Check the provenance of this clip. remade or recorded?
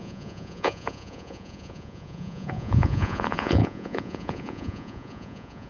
remade